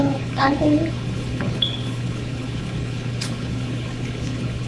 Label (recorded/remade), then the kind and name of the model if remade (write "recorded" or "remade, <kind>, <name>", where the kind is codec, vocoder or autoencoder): remade, codec, HILCodec